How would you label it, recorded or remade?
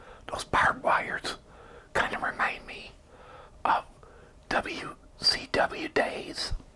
recorded